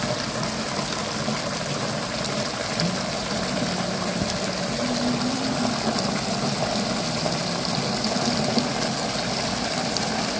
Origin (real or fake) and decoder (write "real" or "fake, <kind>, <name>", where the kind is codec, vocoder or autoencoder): real